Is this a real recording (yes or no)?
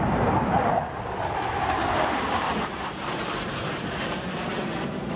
yes